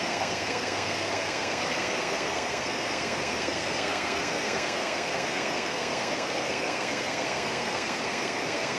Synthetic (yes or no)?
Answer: yes